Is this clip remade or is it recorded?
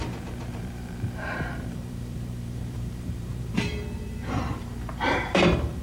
remade